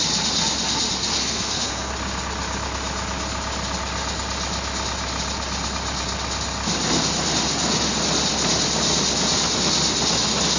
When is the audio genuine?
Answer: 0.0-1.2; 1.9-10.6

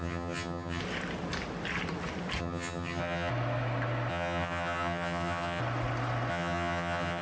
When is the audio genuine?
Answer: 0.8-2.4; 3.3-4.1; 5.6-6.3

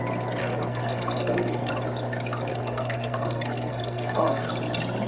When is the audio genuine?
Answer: 0.0-0.4; 1.7-2.5; 4.5-5.1

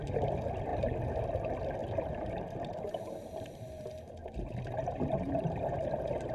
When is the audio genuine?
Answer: 0.0-1.8; 3.6-4.2

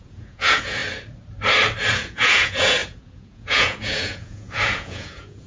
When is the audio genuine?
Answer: 0.8-1.9

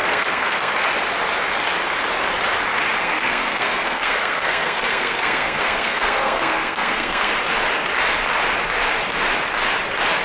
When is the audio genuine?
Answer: 0.7-3.0; 7.3-10.2

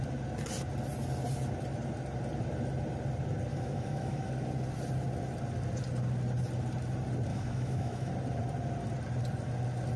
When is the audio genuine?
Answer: 0.0-3.5; 4.3-7.3; 8.1-10.0